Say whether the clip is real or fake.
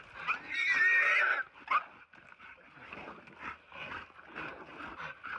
real